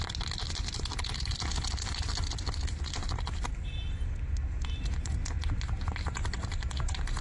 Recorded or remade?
recorded